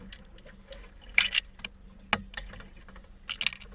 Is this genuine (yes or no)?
yes